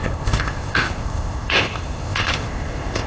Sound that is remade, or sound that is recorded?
remade